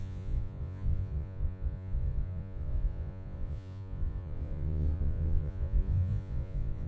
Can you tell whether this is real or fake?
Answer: fake